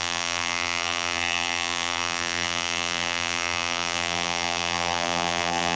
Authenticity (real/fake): fake